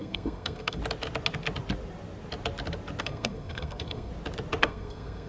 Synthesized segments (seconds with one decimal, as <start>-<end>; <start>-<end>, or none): 0.0-0.8; 3.0-4.1; 4.6-5.3